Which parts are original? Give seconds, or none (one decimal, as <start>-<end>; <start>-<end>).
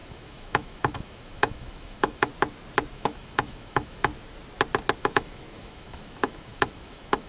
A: 2.3-2.9; 4.1-5.0